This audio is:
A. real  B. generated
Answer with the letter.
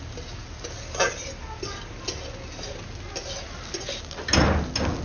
A